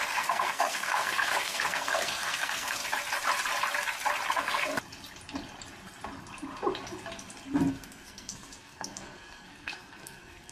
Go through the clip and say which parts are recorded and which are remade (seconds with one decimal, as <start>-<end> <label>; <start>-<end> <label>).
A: 0.0-2.8 remade; 2.8-4.3 recorded; 4.3-4.7 remade; 4.7-7.7 recorded; 7.7-10.5 remade